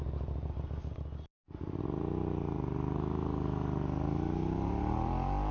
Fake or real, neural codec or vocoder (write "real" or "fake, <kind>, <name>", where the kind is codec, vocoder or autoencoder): real